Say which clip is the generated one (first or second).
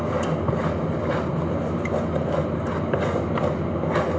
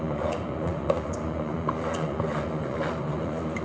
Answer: second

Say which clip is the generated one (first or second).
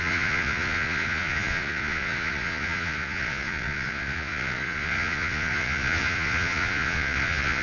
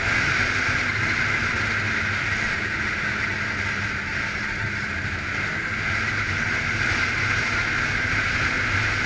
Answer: first